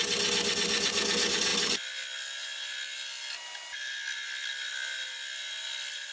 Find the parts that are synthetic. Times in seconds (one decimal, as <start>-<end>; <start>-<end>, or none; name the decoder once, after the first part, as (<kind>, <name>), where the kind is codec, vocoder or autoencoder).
none